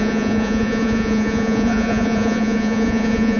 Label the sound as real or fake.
fake